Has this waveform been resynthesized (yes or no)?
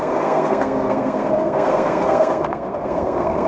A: yes